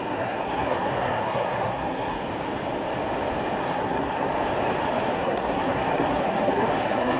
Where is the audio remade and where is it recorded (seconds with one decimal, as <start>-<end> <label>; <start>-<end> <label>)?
0.0-2.2 remade; 2.2-3.6 recorded; 3.6-4.3 remade; 4.3-5.1 recorded; 5.1-7.2 remade

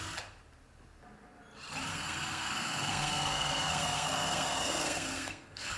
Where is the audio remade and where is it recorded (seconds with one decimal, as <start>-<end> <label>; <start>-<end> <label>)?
0.0-1.9 recorded; 1.9-5.8 remade

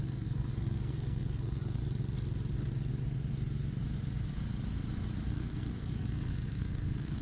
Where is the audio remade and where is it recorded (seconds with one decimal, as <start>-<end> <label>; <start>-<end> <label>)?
0.0-1.8 remade; 1.8-5.3 recorded; 5.3-7.2 remade

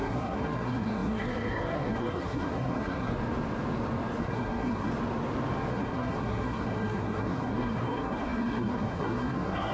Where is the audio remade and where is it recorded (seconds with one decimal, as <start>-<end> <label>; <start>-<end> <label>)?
0.0-3.1 remade; 3.1-4.2 recorded; 4.2-4.9 remade; 4.9-5.7 recorded; 5.7-9.7 remade

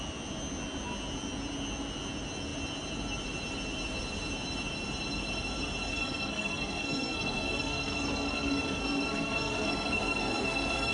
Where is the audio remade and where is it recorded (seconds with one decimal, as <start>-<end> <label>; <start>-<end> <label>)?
0.0-5.9 recorded; 5.9-10.9 remade